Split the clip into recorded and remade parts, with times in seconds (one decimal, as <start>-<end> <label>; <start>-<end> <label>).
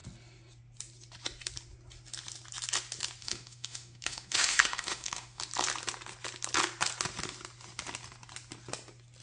0.0-3.2 recorded; 3.2-5.4 remade; 5.4-9.2 recorded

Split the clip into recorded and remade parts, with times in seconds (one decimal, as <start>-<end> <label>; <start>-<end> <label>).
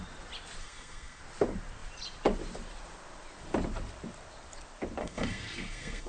0.0-0.6 recorded; 0.6-1.2 remade; 1.2-5.0 recorded; 5.0-6.1 remade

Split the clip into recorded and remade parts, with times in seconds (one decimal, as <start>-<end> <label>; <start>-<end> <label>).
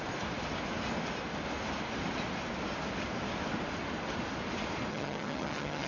0.0-4.9 recorded; 4.9-5.9 remade